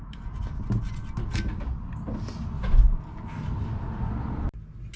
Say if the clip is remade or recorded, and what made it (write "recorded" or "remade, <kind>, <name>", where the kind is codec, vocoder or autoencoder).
recorded